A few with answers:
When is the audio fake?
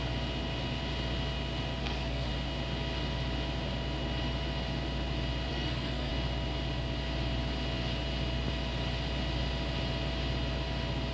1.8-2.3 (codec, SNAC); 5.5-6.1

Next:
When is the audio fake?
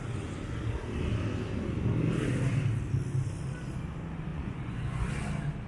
4.3-5.1 (vocoder, Vocos)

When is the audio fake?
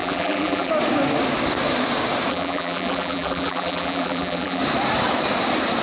0.0-0.7 (vocoder, BigVGAN v2); 2.3-4.6